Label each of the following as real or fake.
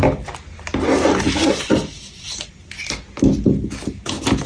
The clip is real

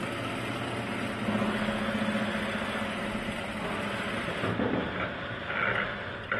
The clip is real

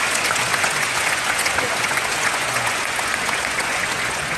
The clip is fake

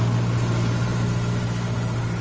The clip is real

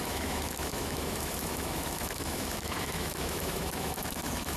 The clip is fake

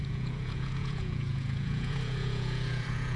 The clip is fake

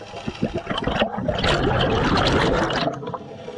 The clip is real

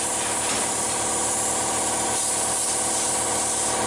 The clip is real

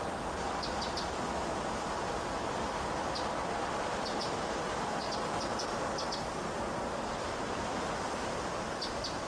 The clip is real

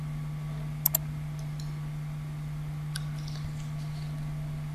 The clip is real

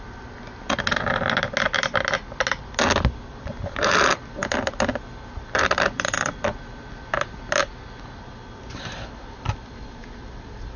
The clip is real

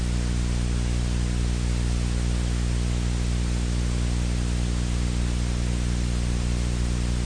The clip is real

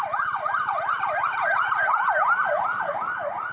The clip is real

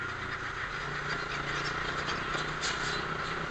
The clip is real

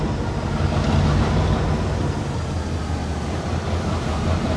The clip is real